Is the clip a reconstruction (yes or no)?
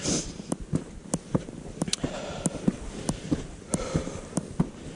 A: no